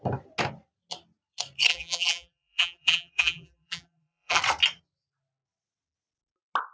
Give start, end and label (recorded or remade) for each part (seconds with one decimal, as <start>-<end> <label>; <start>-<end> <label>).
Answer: 0.0-1.7 recorded; 1.7-4.4 remade; 4.4-6.7 recorded